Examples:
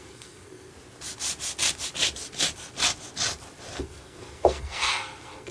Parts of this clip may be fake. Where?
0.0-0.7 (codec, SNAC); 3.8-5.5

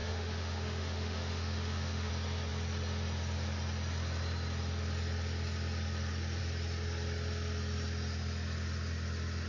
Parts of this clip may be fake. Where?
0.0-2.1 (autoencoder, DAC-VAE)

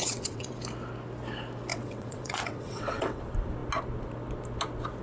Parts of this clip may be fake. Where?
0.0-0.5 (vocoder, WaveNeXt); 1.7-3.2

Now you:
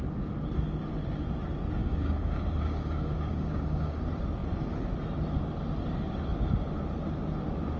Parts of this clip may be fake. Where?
1.8-4.0 (codec, DAC)

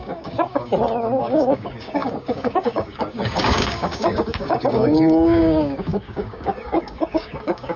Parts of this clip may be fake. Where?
0.0-0.7 (codec, DAC); 1.2-7.8

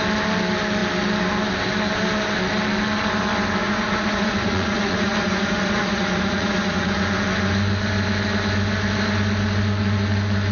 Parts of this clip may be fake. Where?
3.6-7.0 (vocoder, Vocos)